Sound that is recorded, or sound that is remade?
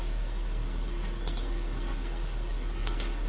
remade